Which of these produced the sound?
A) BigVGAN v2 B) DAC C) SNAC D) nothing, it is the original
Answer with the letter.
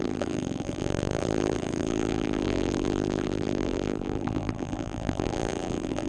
A